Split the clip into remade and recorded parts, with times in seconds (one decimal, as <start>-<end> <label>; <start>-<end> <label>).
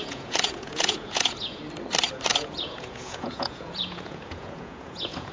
0.0-1.6 remade; 1.6-2.3 recorded; 2.3-5.3 remade